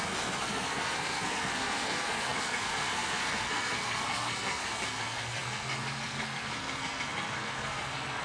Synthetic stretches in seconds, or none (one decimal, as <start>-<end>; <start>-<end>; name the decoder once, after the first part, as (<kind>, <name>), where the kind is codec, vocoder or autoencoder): 0.0-8.2 (codec, SNAC)